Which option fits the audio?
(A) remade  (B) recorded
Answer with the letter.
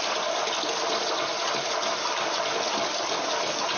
B